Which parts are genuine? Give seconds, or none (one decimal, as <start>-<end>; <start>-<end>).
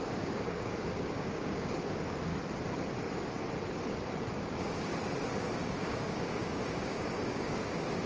2.3-4.3; 4.9-5.6